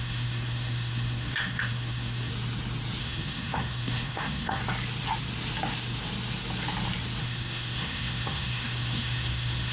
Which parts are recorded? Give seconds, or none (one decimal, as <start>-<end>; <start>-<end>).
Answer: 2.3-3.0; 4.6-7.2